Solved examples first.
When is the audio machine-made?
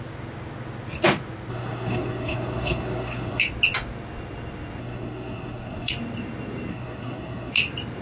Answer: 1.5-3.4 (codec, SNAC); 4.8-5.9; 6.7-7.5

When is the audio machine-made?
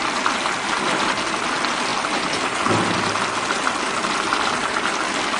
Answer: none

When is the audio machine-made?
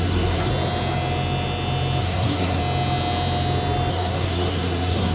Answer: 0.0-0.5 (codec, SNAC); 2.0-2.6; 3.9-5.1